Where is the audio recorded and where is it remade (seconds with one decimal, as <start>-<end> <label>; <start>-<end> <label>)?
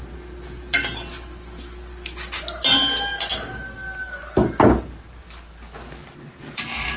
0.0-6.0 recorded; 6.0-6.6 remade; 6.6-7.0 recorded